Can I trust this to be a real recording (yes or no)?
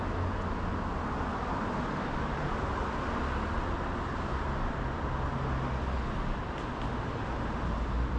yes